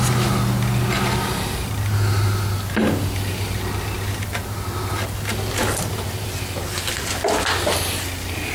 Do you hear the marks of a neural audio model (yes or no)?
no